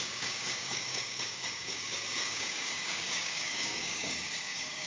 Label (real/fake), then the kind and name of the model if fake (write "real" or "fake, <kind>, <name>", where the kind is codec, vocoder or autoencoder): fake, codec, DAC